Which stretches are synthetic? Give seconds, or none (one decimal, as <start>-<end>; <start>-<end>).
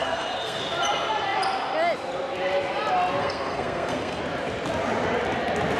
0.0-0.6; 3.2-4.2